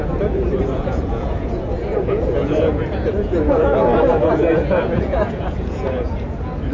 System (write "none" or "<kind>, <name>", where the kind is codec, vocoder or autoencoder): vocoder, Vocos